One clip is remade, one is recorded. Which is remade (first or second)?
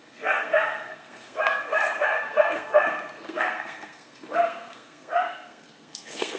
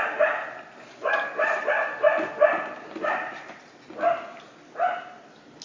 first